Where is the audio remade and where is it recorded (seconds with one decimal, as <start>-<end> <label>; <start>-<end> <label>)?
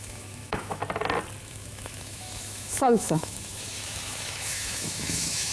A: 0.0-0.8 remade; 0.8-1.4 recorded; 1.4-5.5 remade